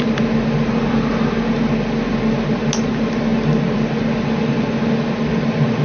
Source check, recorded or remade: recorded